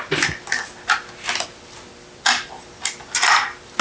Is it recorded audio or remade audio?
recorded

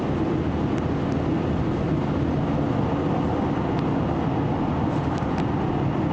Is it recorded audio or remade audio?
recorded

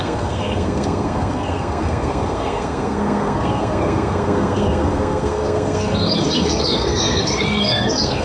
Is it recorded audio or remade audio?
remade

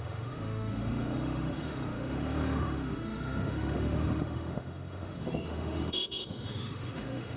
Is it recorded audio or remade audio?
remade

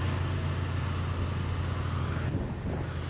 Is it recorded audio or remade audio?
recorded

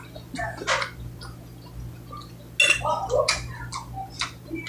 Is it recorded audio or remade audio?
recorded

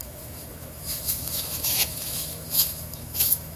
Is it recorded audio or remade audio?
remade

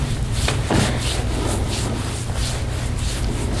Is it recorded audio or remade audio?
recorded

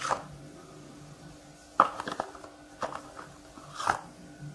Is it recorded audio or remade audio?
recorded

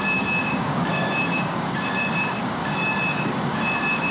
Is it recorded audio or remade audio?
remade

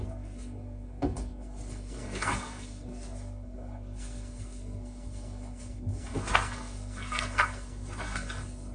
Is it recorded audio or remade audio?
remade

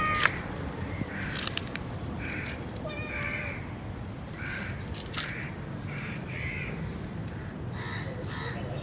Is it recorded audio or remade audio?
remade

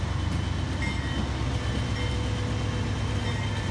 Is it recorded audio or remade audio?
recorded